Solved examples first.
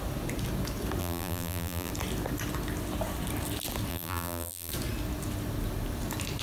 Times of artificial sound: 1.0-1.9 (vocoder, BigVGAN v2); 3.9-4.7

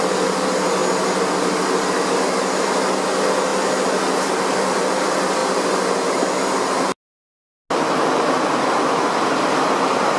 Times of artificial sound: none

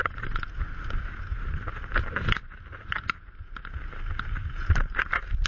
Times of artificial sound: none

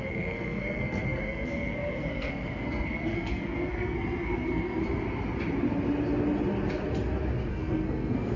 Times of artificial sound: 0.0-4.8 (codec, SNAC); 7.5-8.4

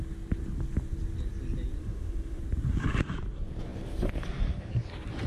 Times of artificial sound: 1.8-2.4 (autoencoder, DAC-VAE)

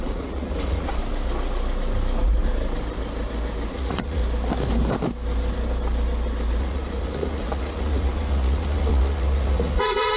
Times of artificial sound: 0.0-1.0 (vocoder, Vocos); 3.7-4.2; 6.6-10.2